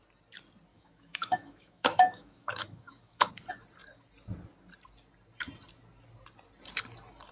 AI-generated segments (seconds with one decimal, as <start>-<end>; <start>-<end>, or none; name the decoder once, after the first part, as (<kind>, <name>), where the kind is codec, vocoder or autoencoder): 0.7-3.3 (autoencoder, DAC-VAE)